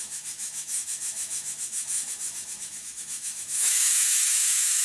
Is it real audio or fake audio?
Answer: fake